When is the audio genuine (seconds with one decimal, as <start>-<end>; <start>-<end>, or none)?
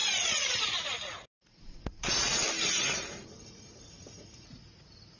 2.4-3.1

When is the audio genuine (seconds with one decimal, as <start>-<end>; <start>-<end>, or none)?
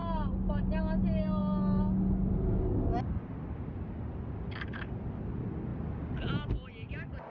0.0-7.3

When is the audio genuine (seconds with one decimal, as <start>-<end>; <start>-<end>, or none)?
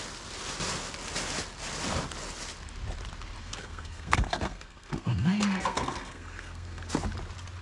0.0-3.4; 6.9-7.6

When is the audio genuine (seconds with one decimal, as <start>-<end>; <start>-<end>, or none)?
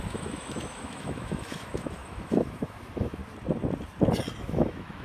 3.2-4.4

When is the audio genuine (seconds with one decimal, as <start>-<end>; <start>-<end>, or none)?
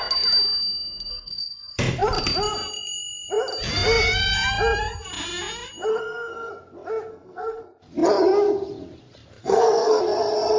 0.0-1.1; 1.8-5.9; 6.5-7.1; 7.6-9.4; 10.0-10.6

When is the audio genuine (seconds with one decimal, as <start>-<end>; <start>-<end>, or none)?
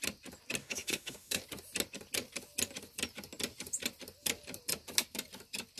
0.0-0.6; 1.4-5.8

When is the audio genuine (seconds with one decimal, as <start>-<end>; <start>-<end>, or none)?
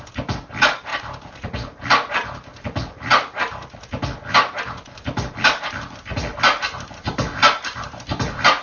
0.0-8.6